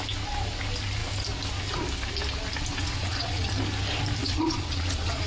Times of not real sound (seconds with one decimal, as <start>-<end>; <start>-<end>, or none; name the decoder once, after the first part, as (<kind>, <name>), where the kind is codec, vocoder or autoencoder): 2.7-3.5 (vocoder, Vocos); 4.2-5.3